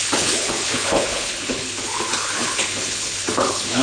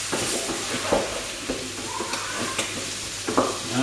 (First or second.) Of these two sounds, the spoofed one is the first